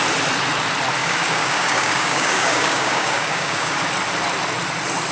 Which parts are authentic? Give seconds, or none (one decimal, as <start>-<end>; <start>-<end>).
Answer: 0.0-1.0; 3.8-5.1